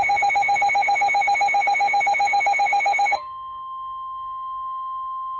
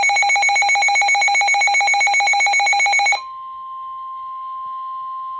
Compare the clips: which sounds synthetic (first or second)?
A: first